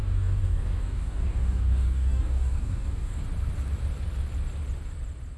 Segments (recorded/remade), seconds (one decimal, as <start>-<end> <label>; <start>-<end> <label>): 0.0-3.2 remade; 3.2-5.4 recorded